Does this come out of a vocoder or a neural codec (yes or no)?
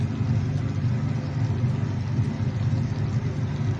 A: no